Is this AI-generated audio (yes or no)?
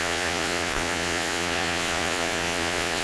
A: yes